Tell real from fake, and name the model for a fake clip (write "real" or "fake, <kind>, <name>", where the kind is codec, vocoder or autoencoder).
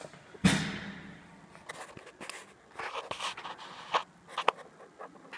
real